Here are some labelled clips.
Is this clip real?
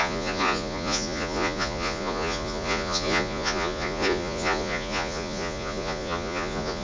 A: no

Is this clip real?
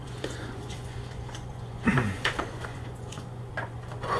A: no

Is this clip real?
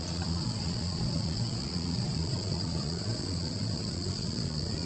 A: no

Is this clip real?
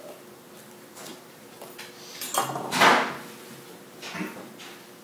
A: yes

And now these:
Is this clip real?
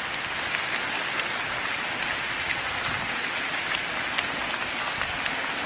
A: yes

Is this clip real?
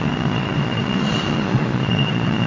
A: no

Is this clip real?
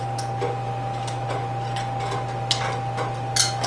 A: yes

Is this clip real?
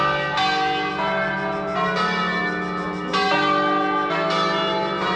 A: yes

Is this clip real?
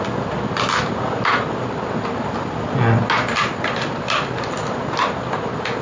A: yes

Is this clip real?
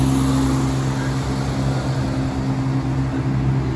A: yes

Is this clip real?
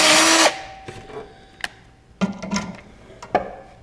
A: yes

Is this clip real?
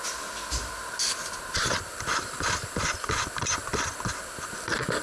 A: yes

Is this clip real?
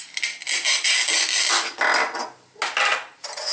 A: yes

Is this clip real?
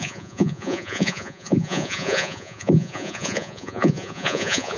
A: no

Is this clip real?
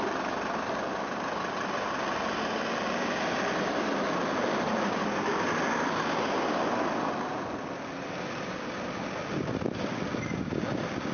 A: yes